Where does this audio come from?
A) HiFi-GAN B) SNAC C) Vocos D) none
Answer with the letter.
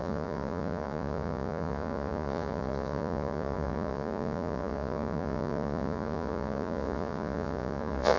C